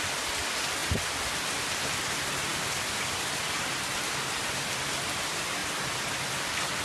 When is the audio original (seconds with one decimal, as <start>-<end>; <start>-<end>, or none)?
0.0-0.8; 1.5-2.5; 3.3-5.6; 6.3-6.8